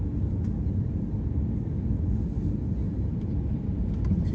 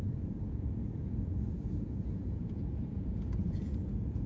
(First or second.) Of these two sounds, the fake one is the second